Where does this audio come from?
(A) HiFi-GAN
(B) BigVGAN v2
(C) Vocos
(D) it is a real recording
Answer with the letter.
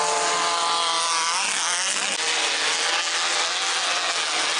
D